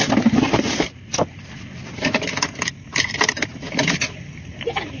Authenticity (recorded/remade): recorded